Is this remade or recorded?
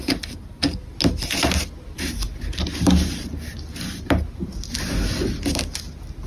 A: recorded